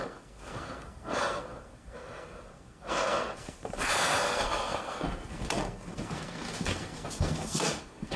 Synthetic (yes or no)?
yes